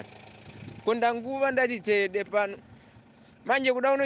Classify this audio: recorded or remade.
recorded